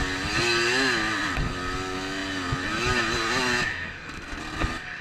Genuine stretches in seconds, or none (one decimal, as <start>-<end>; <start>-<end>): 0.0-3.7; 4.4-5.0